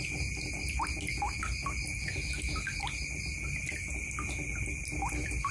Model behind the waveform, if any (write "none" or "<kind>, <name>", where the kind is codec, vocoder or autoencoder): none